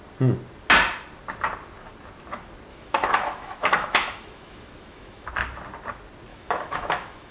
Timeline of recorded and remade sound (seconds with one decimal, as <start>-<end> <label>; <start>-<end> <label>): 0.0-2.7 recorded; 2.7-5.3 remade; 5.3-6.3 recorded; 6.3-7.3 remade